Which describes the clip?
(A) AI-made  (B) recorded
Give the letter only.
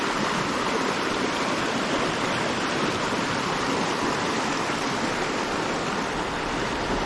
A